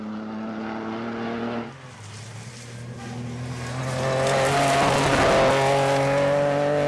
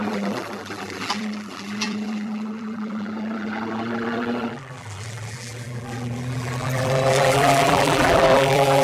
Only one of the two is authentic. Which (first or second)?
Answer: first